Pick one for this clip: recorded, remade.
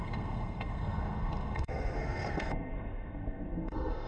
remade